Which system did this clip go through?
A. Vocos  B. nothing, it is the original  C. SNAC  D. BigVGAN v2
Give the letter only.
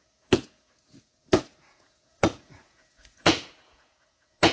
A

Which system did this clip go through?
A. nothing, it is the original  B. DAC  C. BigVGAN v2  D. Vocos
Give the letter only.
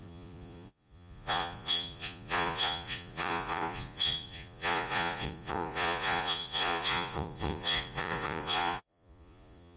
D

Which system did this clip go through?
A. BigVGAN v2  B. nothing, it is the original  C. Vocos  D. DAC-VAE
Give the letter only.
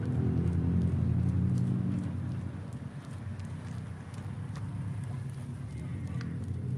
B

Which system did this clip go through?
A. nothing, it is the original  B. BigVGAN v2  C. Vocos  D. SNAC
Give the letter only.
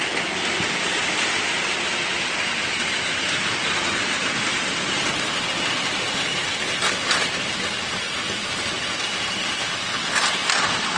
A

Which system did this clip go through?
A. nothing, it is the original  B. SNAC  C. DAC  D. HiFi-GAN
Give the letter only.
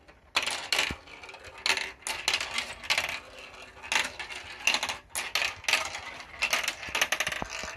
A